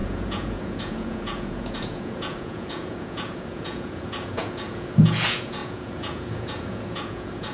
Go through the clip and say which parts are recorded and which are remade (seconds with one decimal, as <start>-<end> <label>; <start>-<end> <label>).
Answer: 0.0-7.5 remade